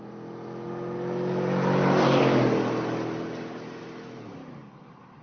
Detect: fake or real real